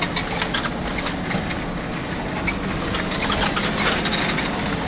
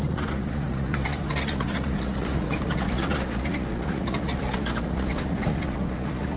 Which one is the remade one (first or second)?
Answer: second